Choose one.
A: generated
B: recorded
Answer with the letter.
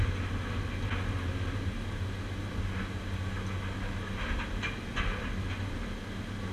B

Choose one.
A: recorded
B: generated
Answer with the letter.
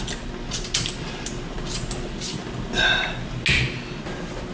A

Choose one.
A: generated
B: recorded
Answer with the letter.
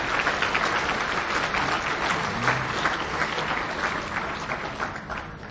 B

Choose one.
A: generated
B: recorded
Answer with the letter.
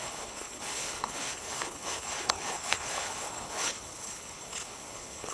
A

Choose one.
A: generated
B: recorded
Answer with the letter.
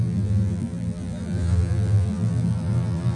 A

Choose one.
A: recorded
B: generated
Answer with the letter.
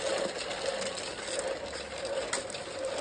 A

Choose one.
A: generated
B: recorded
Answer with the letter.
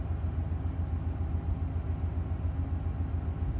B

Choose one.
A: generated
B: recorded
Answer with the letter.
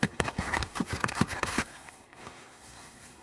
A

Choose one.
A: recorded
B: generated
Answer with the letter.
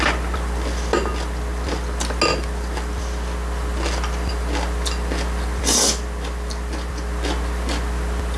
A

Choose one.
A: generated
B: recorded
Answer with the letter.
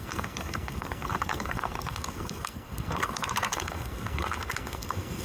A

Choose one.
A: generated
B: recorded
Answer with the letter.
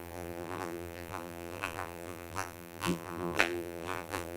A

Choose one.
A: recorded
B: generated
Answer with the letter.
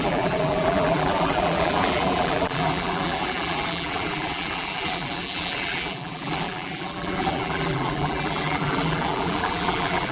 B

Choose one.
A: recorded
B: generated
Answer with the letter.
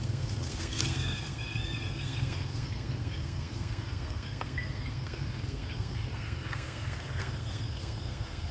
B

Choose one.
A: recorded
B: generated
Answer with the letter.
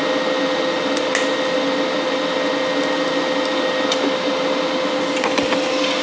A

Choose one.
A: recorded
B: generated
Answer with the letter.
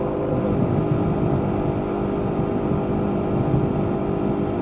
A